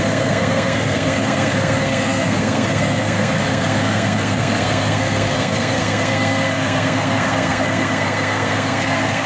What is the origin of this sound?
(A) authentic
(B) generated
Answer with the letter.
B